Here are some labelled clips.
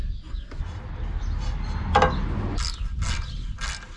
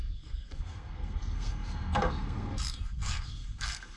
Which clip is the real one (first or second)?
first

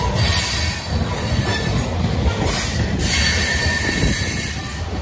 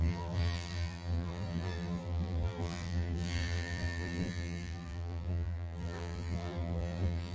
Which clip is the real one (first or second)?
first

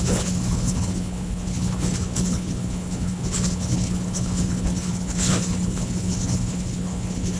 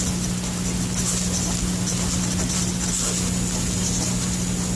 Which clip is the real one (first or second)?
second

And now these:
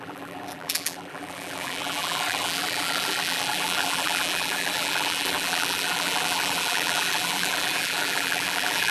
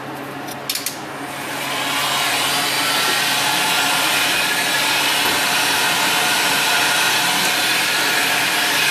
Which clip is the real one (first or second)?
second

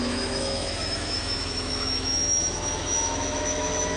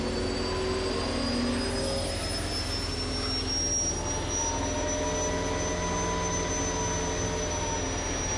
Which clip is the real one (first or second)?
second